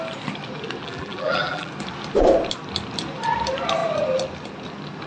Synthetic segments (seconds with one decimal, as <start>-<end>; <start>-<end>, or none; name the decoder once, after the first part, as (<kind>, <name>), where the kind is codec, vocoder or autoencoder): 0.8-1.7 (vocoder, BigVGAN v2)